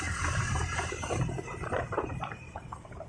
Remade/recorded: remade